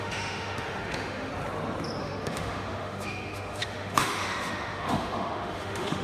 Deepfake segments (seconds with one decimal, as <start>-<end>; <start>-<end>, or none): 0.0-1.3; 2.0-6.0